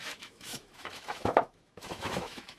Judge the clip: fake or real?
fake